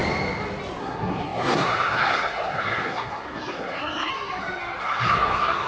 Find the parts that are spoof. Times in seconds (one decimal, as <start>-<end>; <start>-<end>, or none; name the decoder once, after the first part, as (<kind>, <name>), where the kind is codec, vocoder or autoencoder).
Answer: 0.8-4.1 (codec, SNAC); 4.8-5.7